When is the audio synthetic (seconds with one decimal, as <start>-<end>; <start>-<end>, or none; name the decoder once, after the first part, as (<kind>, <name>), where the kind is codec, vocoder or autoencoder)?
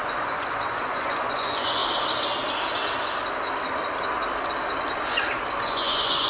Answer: 0.0-1.8 (vocoder, Vocos); 5.6-6.3